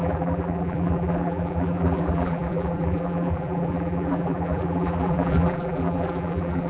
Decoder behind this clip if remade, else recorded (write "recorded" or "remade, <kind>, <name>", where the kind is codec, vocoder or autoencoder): remade, vocoder, BigVGAN v2